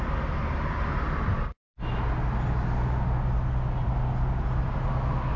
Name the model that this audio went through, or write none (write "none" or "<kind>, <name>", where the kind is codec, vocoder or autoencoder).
none